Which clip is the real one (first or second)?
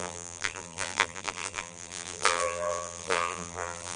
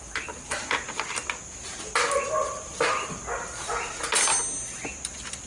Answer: second